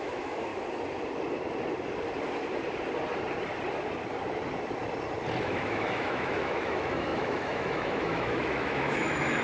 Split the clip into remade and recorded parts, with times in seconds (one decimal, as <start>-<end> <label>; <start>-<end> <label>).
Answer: 0.0-0.5 remade; 0.5-5.4 recorded; 5.4-9.4 remade

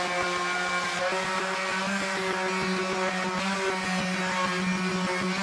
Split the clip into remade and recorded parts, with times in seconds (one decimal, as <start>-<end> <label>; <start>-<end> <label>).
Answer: 0.0-5.4 recorded